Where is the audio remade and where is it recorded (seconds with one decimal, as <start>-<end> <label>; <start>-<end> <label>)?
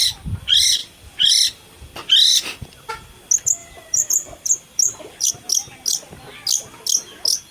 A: 0.0-3.6 recorded; 3.6-5.3 remade; 5.3-7.5 recorded